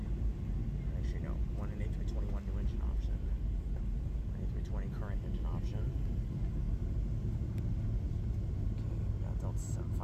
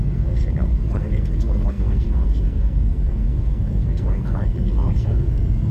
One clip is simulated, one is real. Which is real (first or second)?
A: first